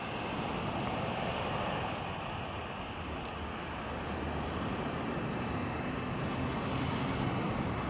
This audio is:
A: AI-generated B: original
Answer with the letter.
B